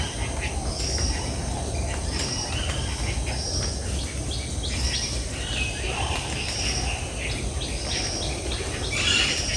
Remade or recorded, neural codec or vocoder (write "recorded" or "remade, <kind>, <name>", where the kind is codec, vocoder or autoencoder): recorded